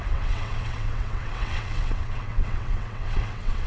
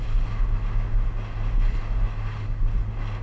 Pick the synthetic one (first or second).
first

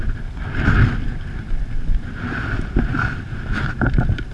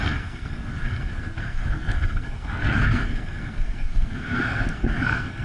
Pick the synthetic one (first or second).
second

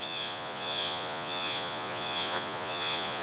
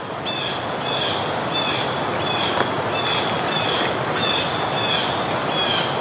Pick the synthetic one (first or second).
first